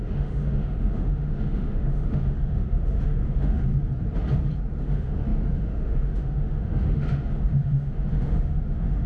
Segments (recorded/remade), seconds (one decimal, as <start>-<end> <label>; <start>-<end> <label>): 0.0-3.7 remade; 3.7-4.8 recorded; 4.8-9.1 remade

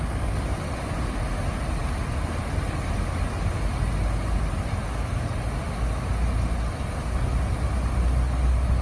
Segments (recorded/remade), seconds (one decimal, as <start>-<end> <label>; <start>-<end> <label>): 0.0-8.8 recorded

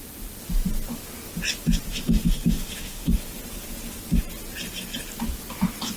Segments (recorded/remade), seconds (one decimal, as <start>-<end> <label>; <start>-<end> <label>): 0.0-1.9 recorded; 1.9-3.2 remade; 3.2-6.0 recorded

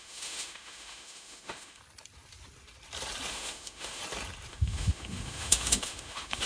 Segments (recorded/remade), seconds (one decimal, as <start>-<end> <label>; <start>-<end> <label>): 0.0-1.8 remade; 1.8-3.3 recorded; 3.3-4.0 remade; 4.0-4.5 recorded; 4.5-6.5 remade

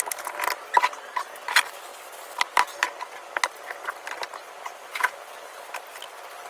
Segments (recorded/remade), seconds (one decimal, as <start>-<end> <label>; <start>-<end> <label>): 0.0-6.5 recorded

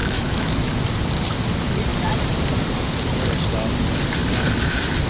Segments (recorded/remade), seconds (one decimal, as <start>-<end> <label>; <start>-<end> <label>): 0.0-0.7 remade; 0.7-5.1 recorded

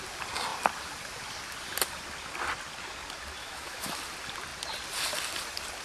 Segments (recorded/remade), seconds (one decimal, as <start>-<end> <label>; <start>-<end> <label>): 0.0-3.4 recorded; 3.4-3.9 remade; 3.9-5.8 recorded